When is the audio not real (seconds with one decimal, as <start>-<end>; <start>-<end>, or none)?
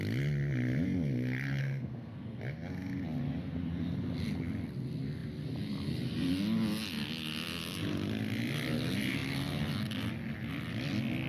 1.6-2.4